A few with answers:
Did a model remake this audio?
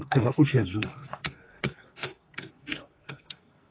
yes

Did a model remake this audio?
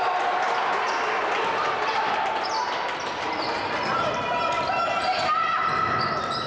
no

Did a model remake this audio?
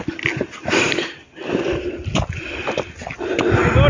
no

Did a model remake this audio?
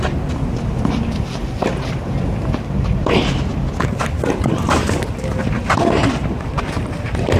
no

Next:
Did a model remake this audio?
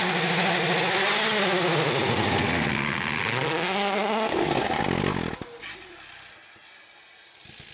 no